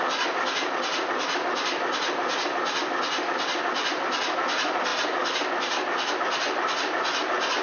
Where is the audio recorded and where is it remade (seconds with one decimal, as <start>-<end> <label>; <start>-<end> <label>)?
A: 0.0-7.6 recorded